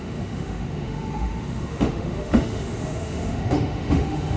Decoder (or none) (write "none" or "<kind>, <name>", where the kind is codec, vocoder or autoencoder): autoencoder, DAC-VAE